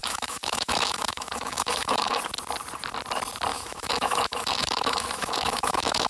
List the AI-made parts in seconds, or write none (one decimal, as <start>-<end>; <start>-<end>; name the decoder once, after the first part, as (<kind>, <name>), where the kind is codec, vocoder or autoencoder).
0.0-2.2 (autoencoder, DAC-VAE); 3.5-6.1